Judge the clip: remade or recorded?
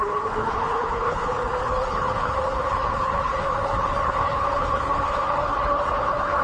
remade